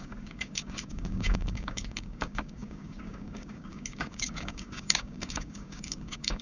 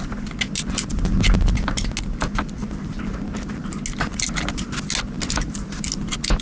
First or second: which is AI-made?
first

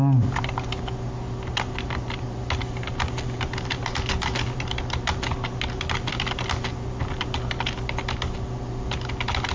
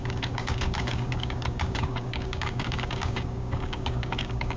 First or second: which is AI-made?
second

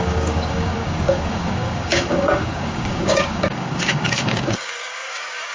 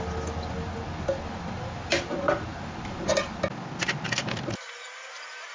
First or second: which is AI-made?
first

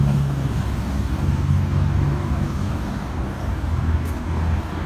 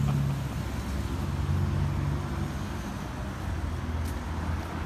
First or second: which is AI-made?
first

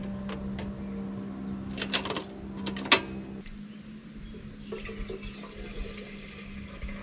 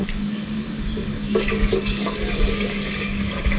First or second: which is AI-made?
second